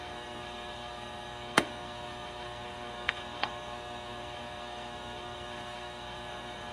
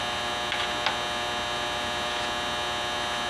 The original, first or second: second